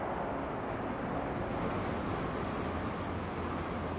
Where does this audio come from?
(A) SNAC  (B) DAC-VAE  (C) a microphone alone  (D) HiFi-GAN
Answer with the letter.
C